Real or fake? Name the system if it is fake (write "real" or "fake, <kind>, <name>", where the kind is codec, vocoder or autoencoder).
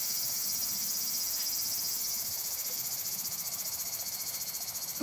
fake, autoencoder, DAC-VAE